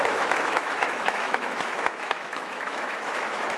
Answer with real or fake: fake